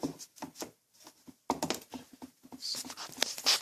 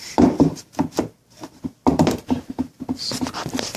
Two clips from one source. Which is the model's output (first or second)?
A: second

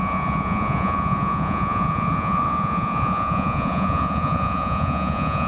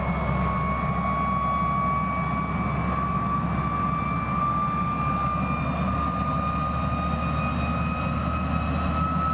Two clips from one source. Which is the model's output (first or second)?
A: first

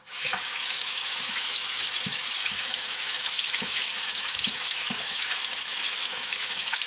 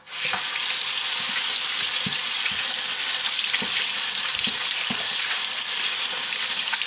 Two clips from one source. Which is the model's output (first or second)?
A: first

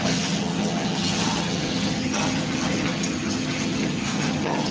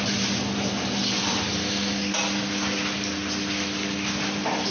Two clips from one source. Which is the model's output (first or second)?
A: first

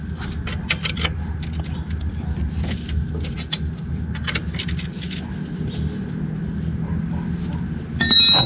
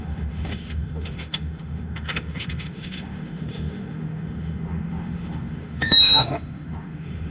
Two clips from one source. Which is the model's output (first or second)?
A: second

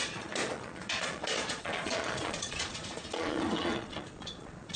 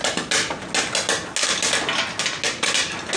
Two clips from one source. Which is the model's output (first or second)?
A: first